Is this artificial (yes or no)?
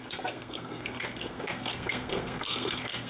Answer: yes